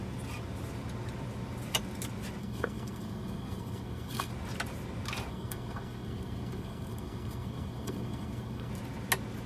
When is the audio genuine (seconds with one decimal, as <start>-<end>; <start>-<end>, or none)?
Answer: 0.0-2.4; 4.3-5.3; 8.7-9.5

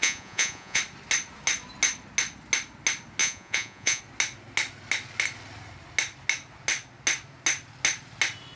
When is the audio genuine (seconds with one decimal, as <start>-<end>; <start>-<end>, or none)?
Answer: 0.8-3.2; 4.0-8.6

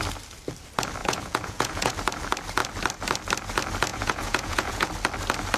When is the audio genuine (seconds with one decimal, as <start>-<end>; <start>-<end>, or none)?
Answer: 0.0-1.0; 1.9-3.9; 4.9-5.6

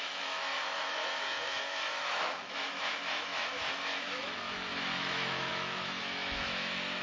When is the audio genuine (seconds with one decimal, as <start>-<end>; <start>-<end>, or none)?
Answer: none

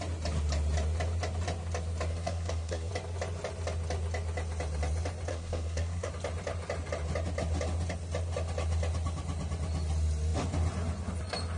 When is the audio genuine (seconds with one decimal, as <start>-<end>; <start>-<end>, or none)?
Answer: 0.0-2.1; 2.9-5.3; 6.1-11.6